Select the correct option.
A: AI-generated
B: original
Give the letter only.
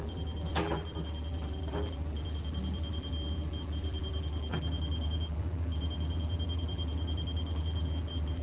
A